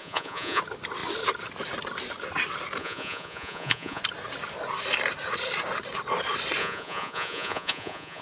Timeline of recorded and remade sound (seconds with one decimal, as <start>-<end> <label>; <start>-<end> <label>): 0.0-0.6 remade; 0.6-2.8 recorded; 2.8-4.0 remade; 4.0-6.6 recorded; 6.6-8.2 remade